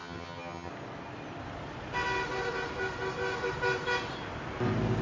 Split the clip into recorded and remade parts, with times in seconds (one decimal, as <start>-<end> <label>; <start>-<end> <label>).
0.0-0.7 remade; 0.7-5.0 recorded